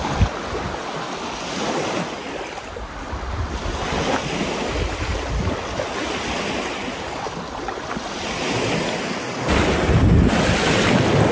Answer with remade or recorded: recorded